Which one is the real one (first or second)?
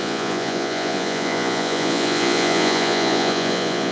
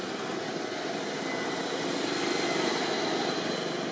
second